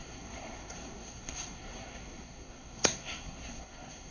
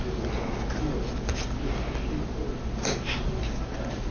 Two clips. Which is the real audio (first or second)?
second